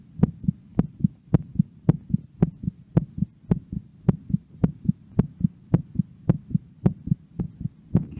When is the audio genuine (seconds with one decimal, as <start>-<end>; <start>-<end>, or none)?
0.0-3.9; 7.4-8.2